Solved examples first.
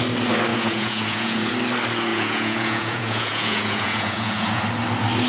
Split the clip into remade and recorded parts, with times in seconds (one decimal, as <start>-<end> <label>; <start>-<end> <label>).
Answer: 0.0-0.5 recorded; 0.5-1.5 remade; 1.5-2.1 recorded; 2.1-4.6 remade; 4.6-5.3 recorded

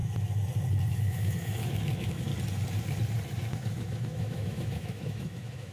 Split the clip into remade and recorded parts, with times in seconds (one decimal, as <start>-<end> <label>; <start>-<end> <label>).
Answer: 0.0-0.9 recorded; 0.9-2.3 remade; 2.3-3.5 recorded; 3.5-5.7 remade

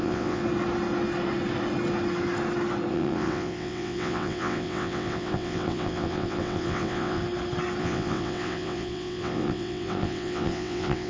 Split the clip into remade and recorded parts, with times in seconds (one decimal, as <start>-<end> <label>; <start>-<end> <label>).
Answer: 0.0-0.4 remade; 0.4-2.9 recorded; 2.9-7.2 remade; 7.2-7.8 recorded; 7.8-11.1 remade

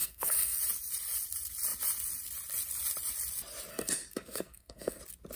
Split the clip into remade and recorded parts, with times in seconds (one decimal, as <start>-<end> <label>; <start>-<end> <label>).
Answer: 0.0-0.6 remade; 0.6-3.7 recorded; 3.7-5.0 remade; 5.0-5.4 recorded

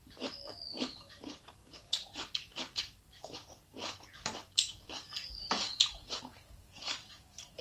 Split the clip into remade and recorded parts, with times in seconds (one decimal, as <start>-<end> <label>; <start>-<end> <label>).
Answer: 0.0-7.6 remade

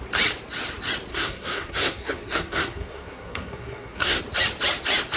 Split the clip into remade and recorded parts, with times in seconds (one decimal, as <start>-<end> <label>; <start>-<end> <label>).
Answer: 0.0-1.1 recorded; 1.1-4.2 remade; 4.2-5.2 recorded